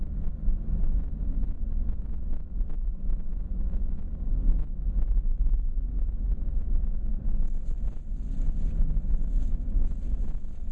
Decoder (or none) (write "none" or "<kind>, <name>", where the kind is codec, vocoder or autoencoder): none